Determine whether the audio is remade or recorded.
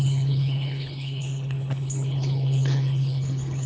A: remade